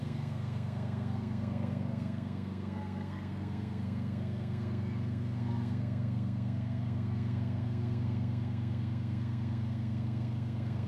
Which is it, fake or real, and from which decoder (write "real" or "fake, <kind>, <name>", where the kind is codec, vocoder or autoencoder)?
fake, codec, SNAC